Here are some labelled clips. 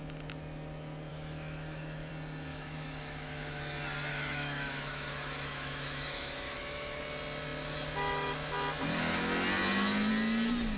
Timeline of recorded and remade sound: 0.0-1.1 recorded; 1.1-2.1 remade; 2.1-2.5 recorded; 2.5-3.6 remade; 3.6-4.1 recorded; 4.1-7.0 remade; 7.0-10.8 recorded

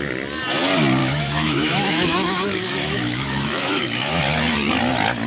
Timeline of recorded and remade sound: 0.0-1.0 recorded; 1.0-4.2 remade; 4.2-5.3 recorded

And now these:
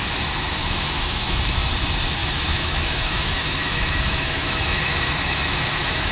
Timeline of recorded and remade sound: 0.0-0.6 recorded; 0.6-1.4 remade; 1.4-2.2 recorded; 2.2-6.1 remade

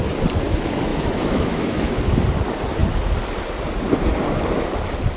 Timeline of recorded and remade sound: 0.0-0.9 recorded; 0.9-2.0 remade; 2.0-5.2 recorded

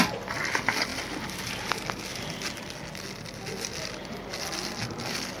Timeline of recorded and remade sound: 0.0-5.4 recorded